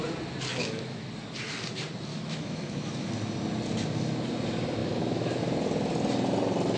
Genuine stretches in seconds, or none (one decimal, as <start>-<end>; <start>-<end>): 0.0-0.5; 1.1-2.1; 3.1-4.8; 5.4-6.8